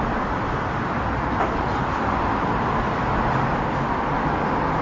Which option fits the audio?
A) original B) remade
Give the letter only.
A